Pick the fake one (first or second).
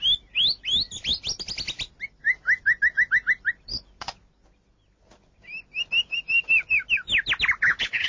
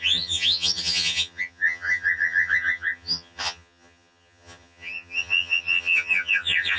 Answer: second